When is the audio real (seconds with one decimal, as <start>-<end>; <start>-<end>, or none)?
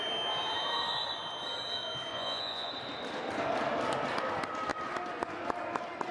0.0-2.1; 2.7-6.1